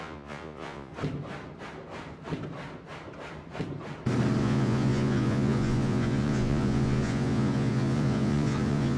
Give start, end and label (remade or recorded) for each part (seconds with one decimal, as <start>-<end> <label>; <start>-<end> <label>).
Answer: 0.0-0.9 remade; 0.9-4.4 recorded; 4.4-9.0 remade